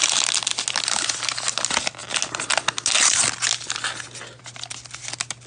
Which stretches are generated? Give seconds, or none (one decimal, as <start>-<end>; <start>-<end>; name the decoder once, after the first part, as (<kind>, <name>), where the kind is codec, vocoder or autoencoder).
none